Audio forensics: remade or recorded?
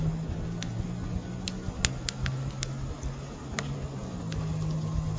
recorded